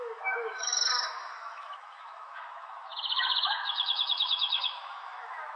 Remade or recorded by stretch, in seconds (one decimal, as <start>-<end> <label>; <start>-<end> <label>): 0.0-5.6 remade